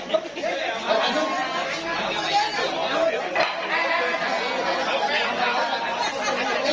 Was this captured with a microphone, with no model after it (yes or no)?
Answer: yes